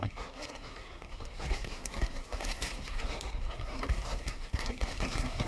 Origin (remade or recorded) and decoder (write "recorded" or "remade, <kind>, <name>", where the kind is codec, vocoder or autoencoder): remade, codec, SNAC